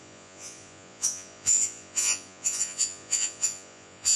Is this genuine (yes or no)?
no